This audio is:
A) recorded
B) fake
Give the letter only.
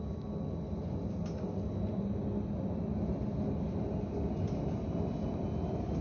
A